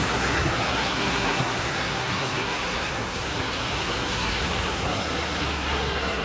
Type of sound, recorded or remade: remade